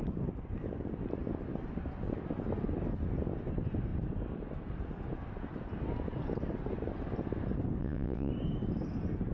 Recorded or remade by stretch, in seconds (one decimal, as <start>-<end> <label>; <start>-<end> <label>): 0.0-7.8 recorded; 7.8-8.3 remade; 8.3-9.3 recorded